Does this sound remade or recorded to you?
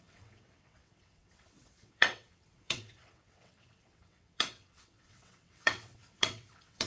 remade